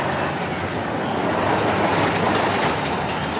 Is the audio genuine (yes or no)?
yes